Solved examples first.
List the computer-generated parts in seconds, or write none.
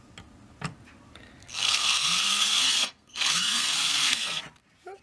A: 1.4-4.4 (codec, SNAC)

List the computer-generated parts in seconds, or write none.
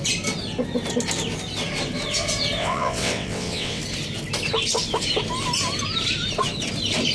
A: 2.6-3.8 (vocoder, WaveNeXt)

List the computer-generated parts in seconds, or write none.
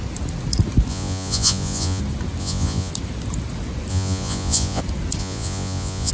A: 0.9-2.0 (vocoder, Vocos); 2.4-2.9; 3.9-4.8; 5.2-6.1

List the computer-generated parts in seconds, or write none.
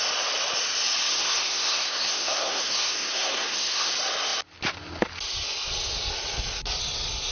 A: 1.1-3.9 (codec, SNAC)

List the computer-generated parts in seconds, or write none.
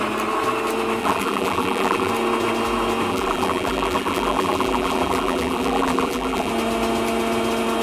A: 1.0-2.1 (vocoder, BigVGAN v2); 3.1-6.5